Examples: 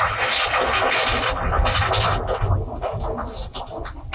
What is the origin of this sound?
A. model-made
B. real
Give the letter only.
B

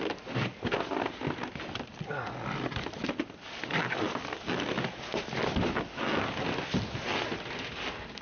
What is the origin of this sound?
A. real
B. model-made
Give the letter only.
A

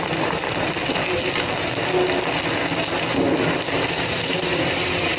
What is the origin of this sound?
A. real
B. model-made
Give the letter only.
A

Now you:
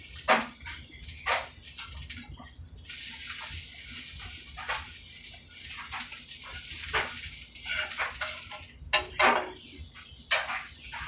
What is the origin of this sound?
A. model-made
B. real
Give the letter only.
B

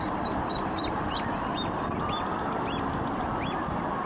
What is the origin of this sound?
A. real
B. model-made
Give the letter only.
A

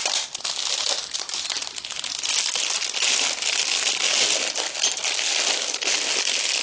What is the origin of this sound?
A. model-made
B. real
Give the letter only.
B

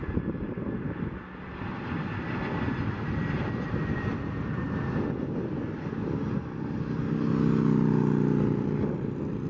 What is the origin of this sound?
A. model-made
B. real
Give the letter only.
B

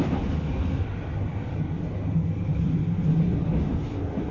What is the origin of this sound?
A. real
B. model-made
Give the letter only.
A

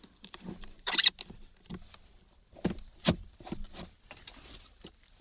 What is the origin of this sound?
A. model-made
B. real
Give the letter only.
B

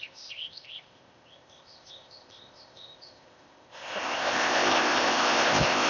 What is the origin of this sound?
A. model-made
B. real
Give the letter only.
A